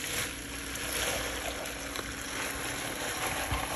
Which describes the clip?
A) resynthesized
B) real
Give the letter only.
B